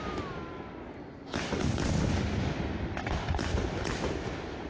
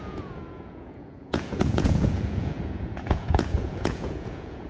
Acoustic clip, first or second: first